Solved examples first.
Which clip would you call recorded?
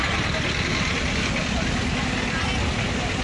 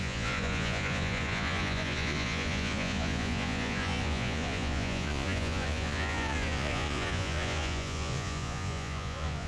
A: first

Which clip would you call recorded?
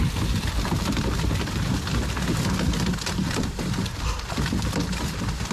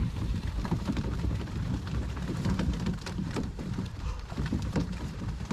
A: first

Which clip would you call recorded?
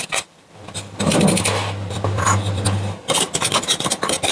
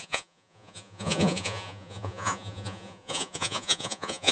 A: first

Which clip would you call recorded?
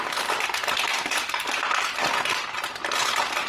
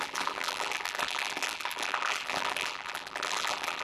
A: first